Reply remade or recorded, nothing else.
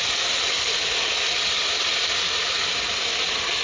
recorded